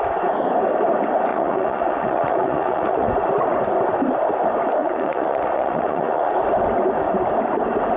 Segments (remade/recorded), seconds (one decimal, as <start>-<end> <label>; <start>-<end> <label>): 0.0-1.3 recorded; 1.3-3.1 remade; 3.1-4.8 recorded; 4.8-6.3 remade; 6.3-8.0 recorded